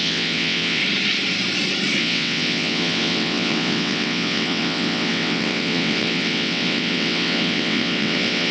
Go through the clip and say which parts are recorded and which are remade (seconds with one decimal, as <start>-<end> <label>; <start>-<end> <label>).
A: 0.0-0.8 remade; 0.8-2.0 recorded; 2.0-8.5 remade